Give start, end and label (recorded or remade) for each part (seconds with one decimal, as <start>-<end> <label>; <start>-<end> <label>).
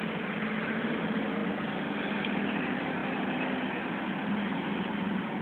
0.0-5.4 recorded